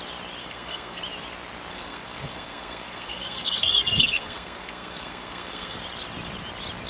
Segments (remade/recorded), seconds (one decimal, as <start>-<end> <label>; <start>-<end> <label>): 0.0-0.4 recorded; 0.4-1.0 remade; 1.0-1.7 recorded; 1.7-5.8 remade; 5.8-6.9 recorded